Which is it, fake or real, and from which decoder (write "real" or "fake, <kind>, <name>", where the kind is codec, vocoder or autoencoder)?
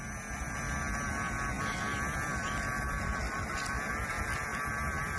real